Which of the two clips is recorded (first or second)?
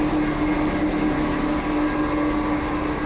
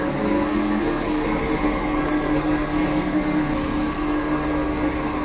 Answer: first